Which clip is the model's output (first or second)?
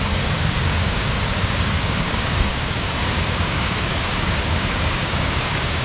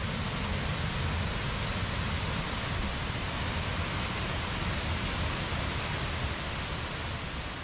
first